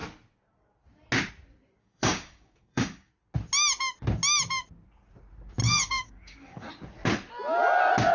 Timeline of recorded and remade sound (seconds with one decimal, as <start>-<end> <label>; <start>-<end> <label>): 0.0-1.8 recorded; 1.8-3.1 remade; 3.1-5.6 recorded; 5.6-6.7 remade; 6.7-8.1 recorded

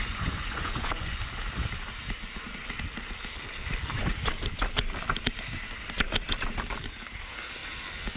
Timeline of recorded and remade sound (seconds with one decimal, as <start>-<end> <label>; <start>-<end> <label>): 0.0-1.3 remade; 1.3-8.2 recorded

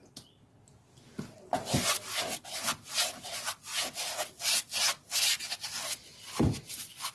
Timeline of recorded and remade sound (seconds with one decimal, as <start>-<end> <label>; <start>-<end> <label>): 0.0-7.1 recorded

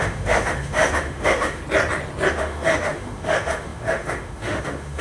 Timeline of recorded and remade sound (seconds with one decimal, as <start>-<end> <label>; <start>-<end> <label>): 0.0-1.6 remade; 1.6-2.3 recorded; 2.3-5.0 remade